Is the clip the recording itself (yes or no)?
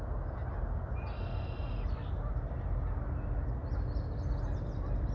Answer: yes